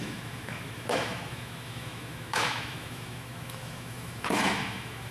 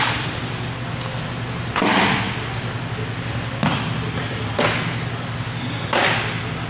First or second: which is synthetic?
first